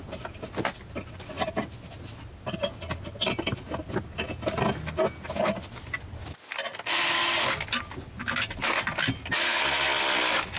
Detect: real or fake real